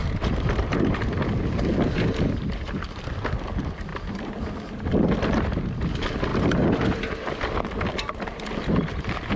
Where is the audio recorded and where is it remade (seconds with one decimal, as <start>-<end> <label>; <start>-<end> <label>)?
0.0-1.0 remade; 1.0-3.9 recorded; 3.9-4.4 remade; 4.4-9.4 recorded